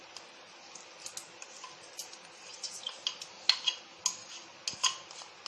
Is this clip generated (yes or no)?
no